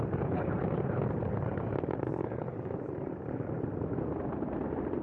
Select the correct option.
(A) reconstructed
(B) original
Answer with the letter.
A